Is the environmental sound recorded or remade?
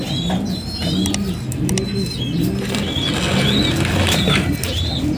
recorded